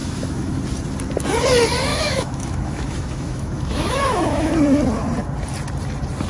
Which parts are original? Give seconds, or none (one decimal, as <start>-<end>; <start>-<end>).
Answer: 0.6-1.9; 4.5-6.3